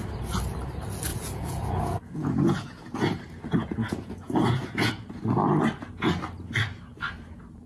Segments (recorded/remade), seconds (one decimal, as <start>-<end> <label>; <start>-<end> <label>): 0.0-1.1 recorded; 1.1-2.8 remade; 2.8-3.8 recorded; 3.8-4.9 remade; 4.9-7.7 recorded